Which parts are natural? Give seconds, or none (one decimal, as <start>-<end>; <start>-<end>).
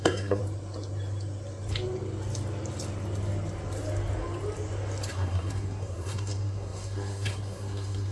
0.4-5.1